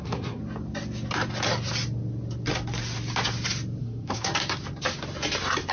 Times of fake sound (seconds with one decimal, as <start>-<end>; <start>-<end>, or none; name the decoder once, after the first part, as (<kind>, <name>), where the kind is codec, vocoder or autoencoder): 0.0-0.4 (codec, SNAC); 3.8-4.3